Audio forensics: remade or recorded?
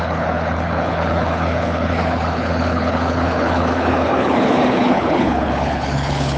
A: remade